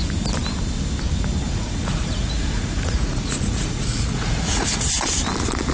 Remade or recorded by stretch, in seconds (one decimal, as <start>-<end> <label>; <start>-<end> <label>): 0.0-1.5 recorded; 1.5-4.9 remade; 4.9-5.7 recorded